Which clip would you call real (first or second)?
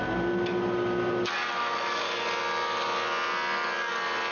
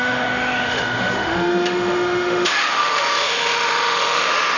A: first